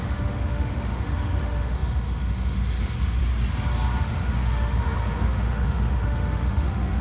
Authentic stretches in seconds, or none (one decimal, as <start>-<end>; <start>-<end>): 3.2-4.0